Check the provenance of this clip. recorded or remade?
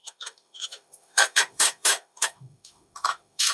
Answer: remade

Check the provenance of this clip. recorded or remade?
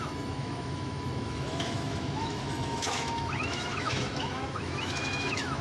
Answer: remade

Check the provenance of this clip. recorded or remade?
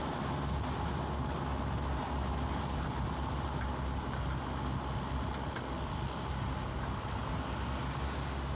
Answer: recorded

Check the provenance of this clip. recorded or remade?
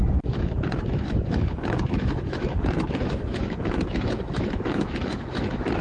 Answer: remade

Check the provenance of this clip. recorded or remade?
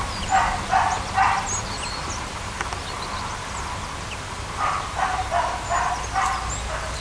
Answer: recorded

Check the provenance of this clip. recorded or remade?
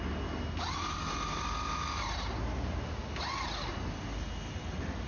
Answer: recorded